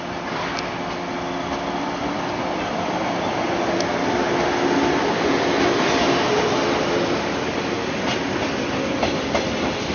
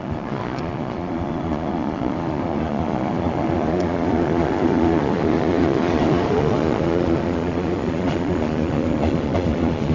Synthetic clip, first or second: second